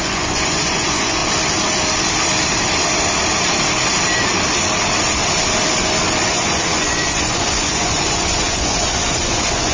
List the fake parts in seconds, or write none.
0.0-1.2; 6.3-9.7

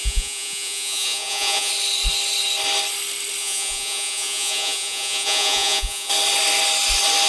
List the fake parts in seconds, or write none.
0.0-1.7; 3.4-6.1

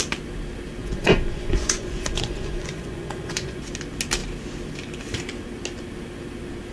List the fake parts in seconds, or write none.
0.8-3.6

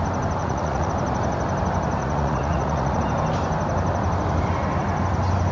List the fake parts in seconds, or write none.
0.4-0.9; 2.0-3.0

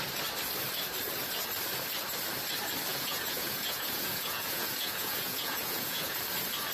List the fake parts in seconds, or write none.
2.9-6.2

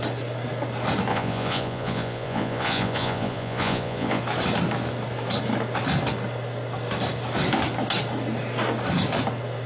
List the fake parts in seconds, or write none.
1.1-4.2

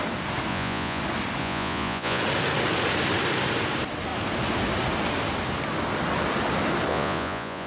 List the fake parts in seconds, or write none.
0.5-1.0; 1.4-2.2; 6.9-7.7